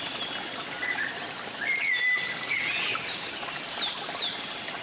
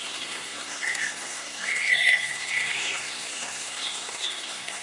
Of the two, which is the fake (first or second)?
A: second